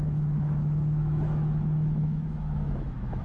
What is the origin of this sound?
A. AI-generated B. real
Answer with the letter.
A